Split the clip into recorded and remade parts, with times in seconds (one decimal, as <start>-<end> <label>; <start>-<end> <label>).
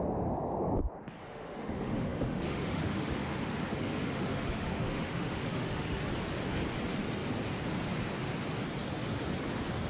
0.0-1.2 recorded; 1.2-6.0 remade; 6.0-9.9 recorded